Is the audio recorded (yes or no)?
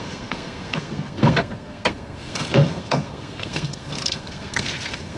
no